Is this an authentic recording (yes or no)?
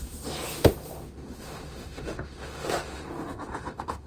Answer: no